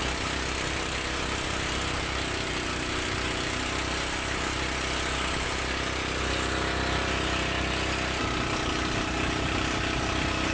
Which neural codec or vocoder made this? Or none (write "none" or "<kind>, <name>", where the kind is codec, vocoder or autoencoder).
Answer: none